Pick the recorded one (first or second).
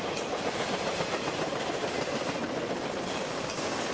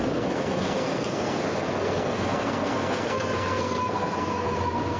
first